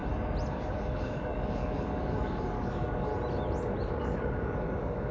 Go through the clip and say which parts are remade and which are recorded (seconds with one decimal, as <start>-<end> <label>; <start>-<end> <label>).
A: 0.0-0.5 recorded; 0.5-3.1 remade; 3.1-3.9 recorded; 3.9-5.1 remade